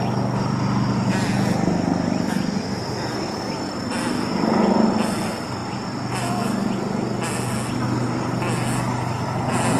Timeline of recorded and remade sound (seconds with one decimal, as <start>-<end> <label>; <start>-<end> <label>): 0.0-9.8 recorded